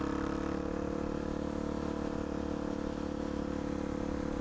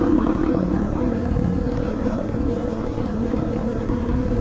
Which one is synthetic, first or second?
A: second